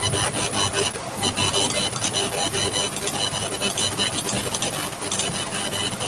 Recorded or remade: recorded